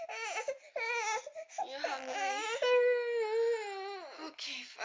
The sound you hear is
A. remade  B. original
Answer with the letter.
B